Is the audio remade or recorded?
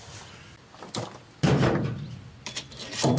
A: recorded